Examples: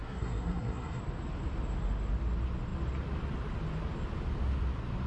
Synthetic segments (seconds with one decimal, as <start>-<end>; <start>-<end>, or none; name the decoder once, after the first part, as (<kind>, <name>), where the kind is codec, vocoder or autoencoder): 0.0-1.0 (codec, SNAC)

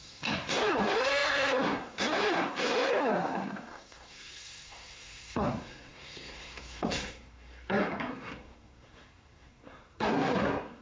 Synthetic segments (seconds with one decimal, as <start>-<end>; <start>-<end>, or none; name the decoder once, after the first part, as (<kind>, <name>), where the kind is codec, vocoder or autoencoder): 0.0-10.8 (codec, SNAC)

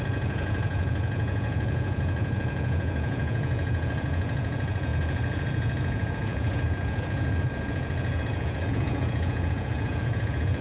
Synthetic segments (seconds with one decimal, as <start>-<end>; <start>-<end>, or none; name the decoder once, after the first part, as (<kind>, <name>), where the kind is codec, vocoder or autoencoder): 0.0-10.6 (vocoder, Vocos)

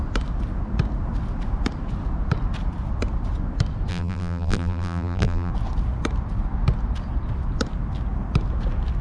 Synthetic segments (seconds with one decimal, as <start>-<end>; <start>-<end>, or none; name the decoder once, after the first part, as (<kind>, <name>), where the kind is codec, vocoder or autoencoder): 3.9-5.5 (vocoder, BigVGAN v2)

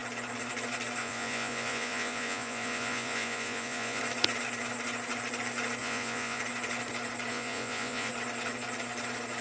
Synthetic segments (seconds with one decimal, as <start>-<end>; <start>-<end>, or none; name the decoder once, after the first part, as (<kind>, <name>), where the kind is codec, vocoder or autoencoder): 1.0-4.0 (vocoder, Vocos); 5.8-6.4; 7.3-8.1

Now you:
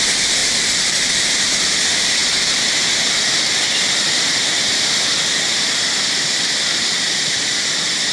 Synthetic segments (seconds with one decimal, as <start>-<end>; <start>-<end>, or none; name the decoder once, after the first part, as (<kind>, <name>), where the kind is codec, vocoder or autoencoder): none

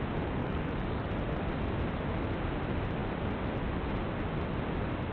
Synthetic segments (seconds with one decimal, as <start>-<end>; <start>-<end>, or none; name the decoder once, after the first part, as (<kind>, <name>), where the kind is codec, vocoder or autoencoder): 0.4-1.1 (codec, DAC)

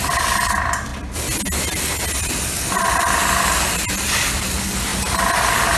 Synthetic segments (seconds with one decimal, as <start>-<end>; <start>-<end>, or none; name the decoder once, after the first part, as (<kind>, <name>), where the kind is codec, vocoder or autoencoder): none